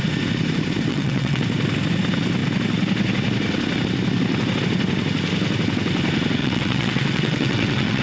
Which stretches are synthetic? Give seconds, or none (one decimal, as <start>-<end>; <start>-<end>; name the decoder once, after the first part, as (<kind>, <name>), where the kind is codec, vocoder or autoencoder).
0.9-1.4 (vocoder, WaveNeXt); 6.4-8.0